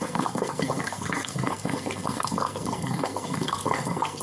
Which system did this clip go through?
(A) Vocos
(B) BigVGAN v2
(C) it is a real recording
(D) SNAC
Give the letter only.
D